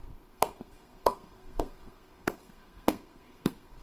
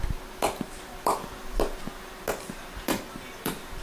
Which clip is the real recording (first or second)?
second